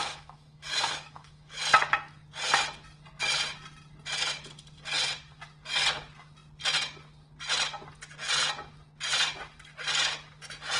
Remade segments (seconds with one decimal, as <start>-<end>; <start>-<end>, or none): 0.0-1.6